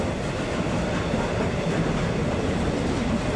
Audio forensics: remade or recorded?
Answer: recorded